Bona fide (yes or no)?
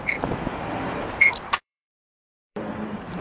no